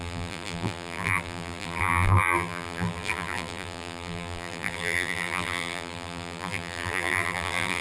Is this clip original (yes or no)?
no